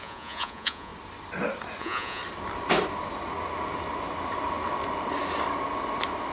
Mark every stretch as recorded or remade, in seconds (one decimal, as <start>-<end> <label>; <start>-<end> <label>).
0.0-0.9 remade; 0.9-1.8 recorded; 1.8-2.2 remade; 2.2-6.3 recorded